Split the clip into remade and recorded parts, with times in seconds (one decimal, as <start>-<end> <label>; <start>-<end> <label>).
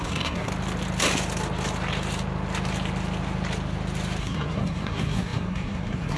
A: 0.0-0.5 remade; 0.5-4.2 recorded; 4.2-6.2 remade